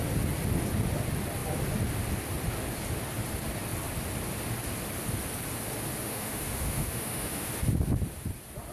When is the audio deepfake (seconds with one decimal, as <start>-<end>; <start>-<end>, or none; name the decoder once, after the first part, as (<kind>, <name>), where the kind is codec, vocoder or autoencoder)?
6.0-7.5 (autoencoder, DAC-VAE)